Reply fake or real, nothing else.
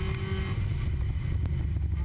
real